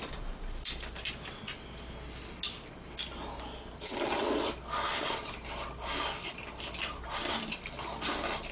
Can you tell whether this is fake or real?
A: real